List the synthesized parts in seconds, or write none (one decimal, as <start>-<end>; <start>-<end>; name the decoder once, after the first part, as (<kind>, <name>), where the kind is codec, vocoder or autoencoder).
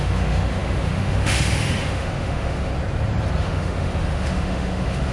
0.0-2.7 (autoencoder, DAC-VAE); 3.4-5.1